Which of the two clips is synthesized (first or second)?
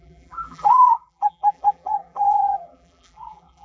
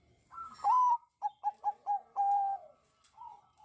first